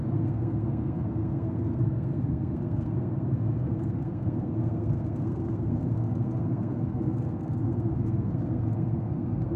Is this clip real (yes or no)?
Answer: no